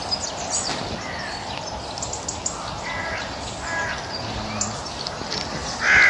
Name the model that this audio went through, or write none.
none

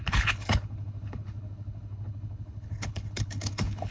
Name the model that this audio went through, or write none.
codec, HILCodec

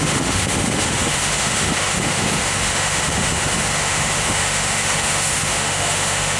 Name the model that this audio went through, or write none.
autoencoder, DAC-VAE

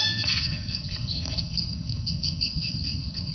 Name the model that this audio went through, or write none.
codec, SNAC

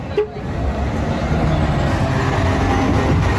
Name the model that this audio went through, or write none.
none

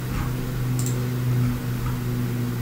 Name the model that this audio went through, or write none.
none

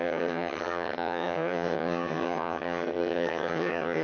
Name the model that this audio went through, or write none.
vocoder, HiFi-GAN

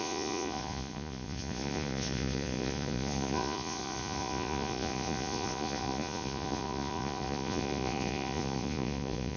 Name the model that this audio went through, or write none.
vocoder, Vocos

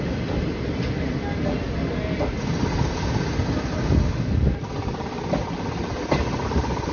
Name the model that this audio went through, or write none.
none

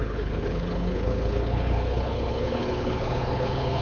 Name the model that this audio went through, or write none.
codec, HILCodec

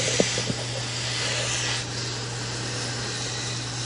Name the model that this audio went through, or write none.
none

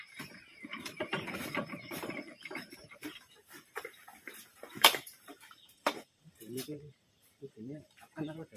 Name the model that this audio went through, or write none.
vocoder, BigVGAN v2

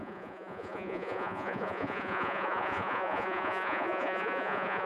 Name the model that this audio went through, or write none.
vocoder, Vocos